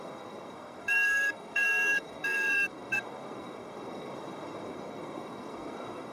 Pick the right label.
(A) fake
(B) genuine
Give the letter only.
A